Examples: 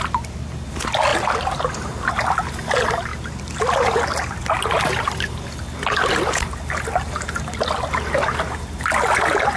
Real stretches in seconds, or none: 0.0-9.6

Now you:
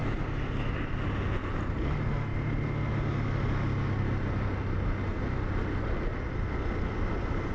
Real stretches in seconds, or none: 0.0-7.5